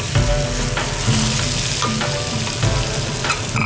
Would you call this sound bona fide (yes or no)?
yes